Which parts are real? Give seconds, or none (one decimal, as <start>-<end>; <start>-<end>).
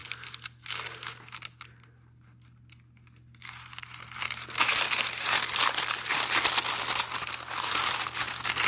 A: 0.0-8.7